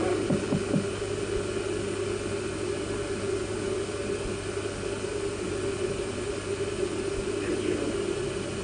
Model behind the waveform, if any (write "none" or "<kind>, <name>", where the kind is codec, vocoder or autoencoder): none